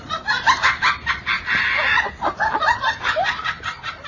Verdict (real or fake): fake